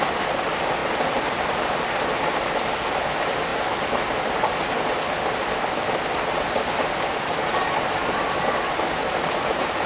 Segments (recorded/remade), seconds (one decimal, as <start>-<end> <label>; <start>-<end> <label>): 0.0-9.9 recorded